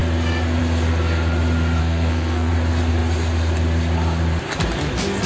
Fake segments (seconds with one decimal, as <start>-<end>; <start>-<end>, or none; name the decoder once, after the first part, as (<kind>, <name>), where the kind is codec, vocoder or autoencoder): 1.8-2.5 (codec, SNAC)